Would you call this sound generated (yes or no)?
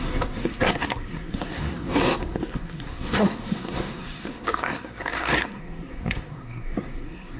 yes